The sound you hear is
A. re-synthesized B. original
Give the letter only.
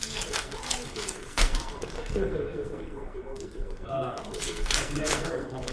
A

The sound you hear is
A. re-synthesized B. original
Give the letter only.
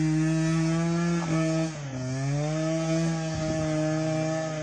B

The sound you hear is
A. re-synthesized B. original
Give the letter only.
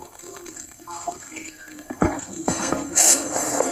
A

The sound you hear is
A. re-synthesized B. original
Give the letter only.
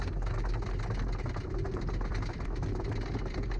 B